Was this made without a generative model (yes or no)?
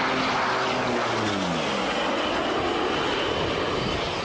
yes